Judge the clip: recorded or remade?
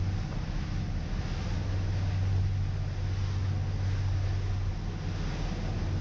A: recorded